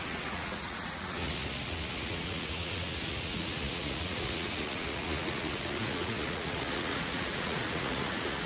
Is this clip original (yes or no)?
no